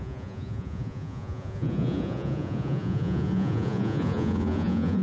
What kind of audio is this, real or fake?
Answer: fake